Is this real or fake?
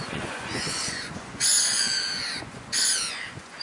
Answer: fake